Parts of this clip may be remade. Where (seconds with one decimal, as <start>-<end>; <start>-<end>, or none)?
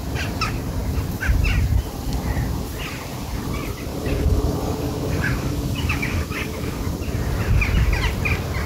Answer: 3.9-6.9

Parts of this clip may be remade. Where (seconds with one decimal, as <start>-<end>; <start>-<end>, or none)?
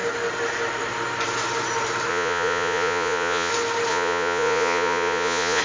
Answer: 2.1-3.5; 3.9-5.6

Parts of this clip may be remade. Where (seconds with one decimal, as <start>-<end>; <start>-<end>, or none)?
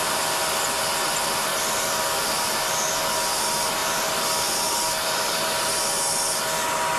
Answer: 3.8-5.8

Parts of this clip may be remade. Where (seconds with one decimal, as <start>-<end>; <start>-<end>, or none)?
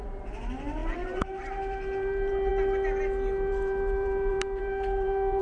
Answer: 0.0-2.5; 3.5-5.4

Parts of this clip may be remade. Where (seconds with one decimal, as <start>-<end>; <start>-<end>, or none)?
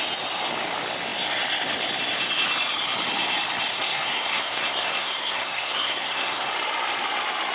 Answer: 3.7-6.5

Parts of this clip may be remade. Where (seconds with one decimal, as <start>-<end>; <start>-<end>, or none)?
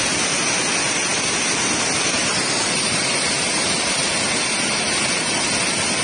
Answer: none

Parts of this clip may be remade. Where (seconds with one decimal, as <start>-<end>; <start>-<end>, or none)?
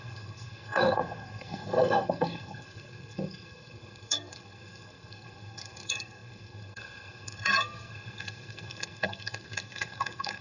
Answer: 0.0-10.4